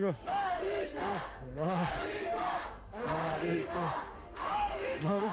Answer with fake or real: fake